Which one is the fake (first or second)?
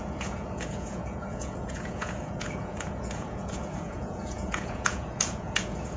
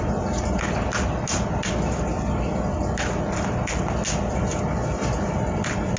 first